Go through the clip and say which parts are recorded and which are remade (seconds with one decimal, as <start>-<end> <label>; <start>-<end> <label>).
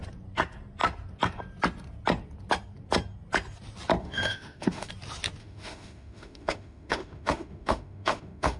0.0-4.0 recorded; 4.0-4.9 remade; 4.9-5.4 recorded; 5.4-8.6 remade